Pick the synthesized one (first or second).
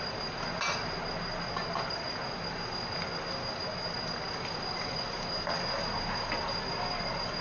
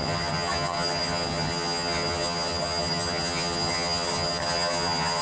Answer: second